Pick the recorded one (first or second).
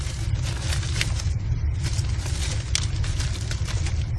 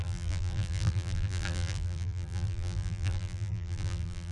first